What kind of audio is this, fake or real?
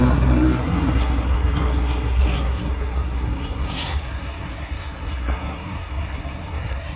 fake